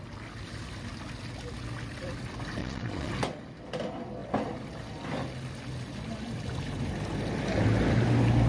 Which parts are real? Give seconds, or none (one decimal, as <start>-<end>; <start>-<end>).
0.0-2.6; 3.1-8.5